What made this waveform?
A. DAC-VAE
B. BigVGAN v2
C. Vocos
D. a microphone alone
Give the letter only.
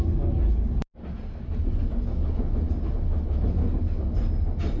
D